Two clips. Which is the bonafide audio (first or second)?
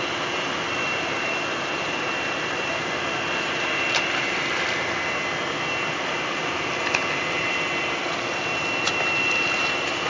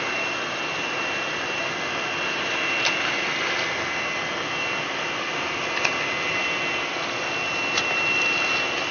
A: second